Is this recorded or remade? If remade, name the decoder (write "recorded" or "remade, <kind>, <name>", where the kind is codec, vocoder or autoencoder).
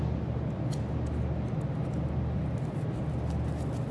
recorded